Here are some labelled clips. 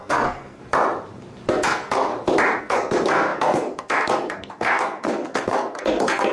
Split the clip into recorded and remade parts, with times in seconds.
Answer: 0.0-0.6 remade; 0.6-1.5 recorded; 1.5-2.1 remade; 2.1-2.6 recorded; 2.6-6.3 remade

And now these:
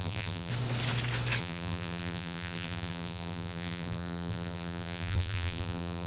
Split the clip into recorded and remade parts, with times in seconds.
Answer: 0.0-0.5 remade; 0.5-1.4 recorded; 1.4-6.1 remade

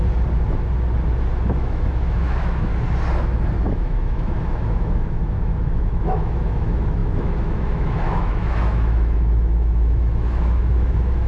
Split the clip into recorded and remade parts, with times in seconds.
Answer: 0.0-1.5 recorded; 1.5-2.7 remade; 2.7-3.7 recorded; 3.7-11.3 remade

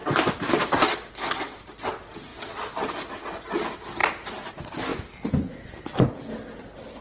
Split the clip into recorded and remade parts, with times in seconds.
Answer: 0.0-1.1 remade; 1.1-2.3 recorded; 2.3-3.1 remade; 3.1-4.0 recorded; 4.0-4.5 remade; 4.5-7.0 recorded

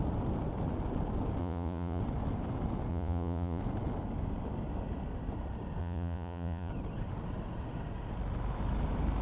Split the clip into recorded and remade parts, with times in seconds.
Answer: 0.0-1.4 recorded; 1.4-2.0 remade; 2.0-2.9 recorded; 2.9-3.6 remade; 3.6-5.8 recorded; 5.8-6.7 remade; 6.7-9.2 recorded

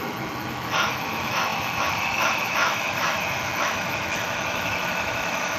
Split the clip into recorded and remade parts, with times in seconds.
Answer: 0.0-5.6 remade

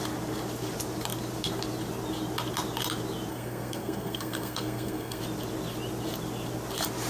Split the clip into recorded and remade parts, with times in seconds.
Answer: 0.0-3.3 recorded; 3.3-5.2 remade; 5.2-7.1 recorded